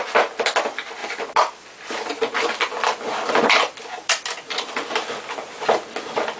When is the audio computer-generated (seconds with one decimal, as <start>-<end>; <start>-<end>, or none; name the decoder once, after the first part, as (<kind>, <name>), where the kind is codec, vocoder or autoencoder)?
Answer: none